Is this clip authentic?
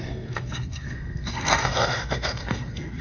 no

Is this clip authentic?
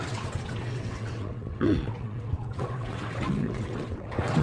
no